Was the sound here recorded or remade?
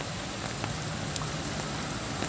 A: recorded